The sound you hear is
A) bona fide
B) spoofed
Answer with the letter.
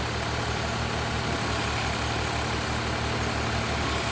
A